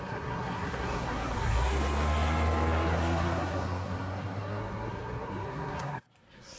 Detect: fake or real fake